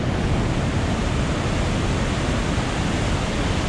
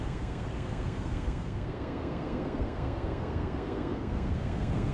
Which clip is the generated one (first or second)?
second